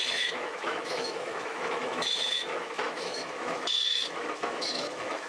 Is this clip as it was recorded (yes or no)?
no